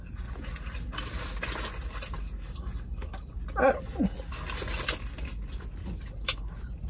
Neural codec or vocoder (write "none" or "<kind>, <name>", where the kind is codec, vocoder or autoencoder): none